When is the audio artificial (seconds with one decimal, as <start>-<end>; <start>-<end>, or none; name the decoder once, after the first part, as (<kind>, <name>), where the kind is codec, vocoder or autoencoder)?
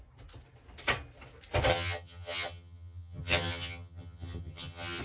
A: 1.7-5.0 (vocoder, HiFi-GAN)